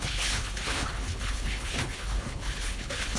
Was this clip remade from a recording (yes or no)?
yes